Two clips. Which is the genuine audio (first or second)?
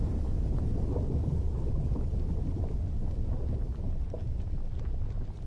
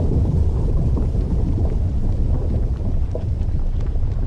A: first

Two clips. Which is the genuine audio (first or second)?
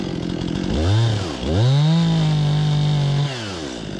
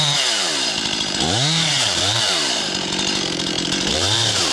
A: first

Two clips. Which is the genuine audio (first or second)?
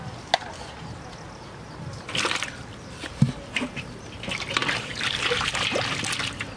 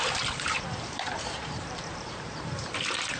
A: first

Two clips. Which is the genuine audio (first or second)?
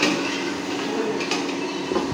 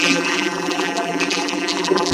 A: first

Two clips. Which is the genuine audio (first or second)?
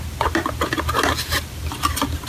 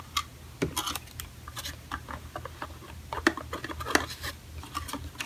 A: second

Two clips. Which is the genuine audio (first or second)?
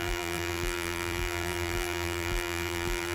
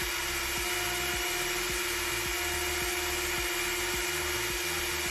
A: second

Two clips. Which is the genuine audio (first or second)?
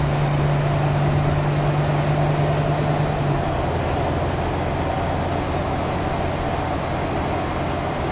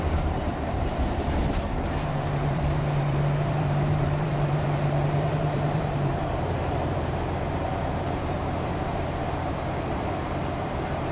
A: first